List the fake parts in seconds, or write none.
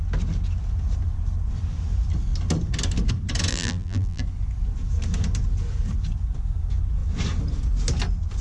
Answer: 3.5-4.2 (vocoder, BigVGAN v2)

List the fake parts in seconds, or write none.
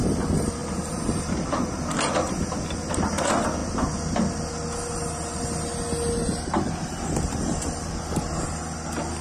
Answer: none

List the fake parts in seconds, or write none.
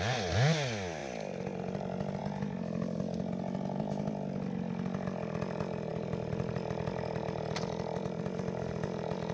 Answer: 5.9-8.2 (vocoder, BigVGAN v2)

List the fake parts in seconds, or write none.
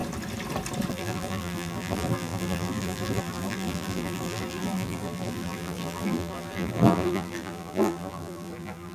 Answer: 0.9-8.9 (vocoder, BigVGAN v2)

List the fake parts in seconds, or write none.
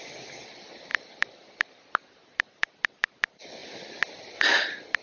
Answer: 0.0-3.6 (vocoder, BigVGAN v2); 4.2-5.0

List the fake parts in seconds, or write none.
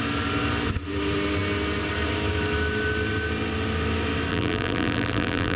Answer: 4.3-5.6 (vocoder, BigVGAN v2)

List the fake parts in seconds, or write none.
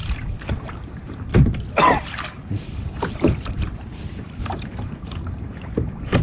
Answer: 0.0-1.3 (vocoder, BigVGAN v2); 2.3-6.2